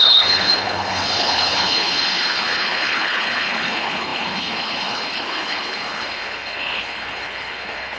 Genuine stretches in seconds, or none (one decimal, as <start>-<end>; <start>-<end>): none